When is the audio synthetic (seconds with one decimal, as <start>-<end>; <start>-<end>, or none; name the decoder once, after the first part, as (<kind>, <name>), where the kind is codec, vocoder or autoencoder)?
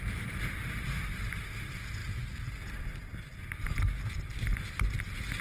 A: none